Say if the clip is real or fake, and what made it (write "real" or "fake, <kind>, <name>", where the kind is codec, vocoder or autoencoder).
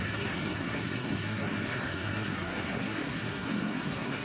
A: fake, codec, SNAC